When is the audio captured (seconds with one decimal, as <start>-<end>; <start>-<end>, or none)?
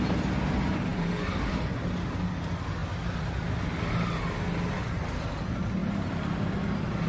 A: 0.0-7.1